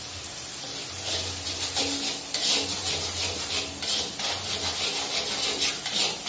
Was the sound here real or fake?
real